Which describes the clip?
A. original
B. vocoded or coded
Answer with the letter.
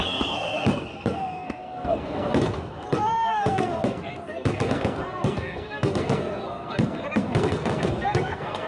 B